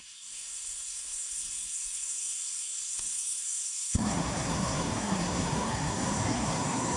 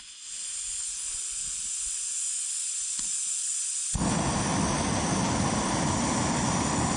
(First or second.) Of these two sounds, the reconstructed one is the first